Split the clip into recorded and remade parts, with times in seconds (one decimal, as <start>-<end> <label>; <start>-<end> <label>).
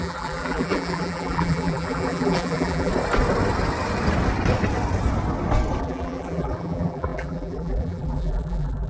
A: 0.0-2.9 remade; 2.9-5.8 recorded; 5.8-8.9 remade